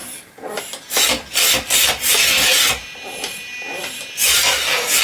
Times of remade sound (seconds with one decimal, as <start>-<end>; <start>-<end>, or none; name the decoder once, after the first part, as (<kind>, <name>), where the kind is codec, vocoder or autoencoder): 1.1-1.9 (vocoder, BigVGAN v2); 2.8-4.4